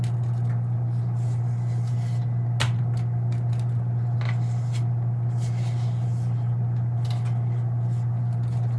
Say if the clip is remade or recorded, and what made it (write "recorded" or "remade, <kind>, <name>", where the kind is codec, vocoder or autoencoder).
recorded